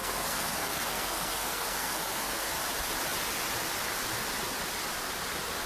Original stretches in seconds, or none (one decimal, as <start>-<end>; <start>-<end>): 2.6-5.7